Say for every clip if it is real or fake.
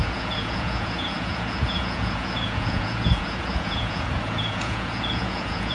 fake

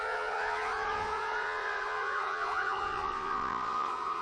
fake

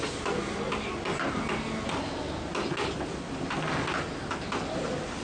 real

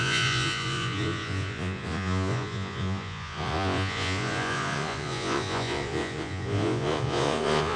fake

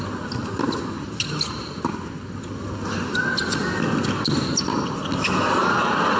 real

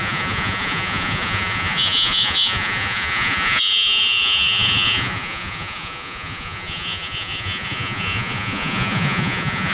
fake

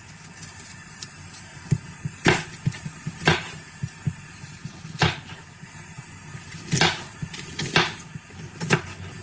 real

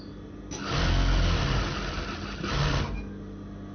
real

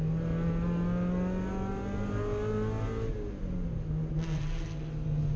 real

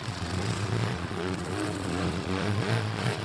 fake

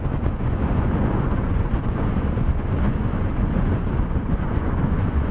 fake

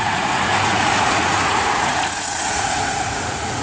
fake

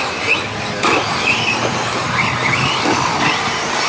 real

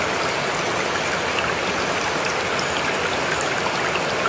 real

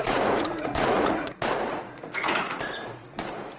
fake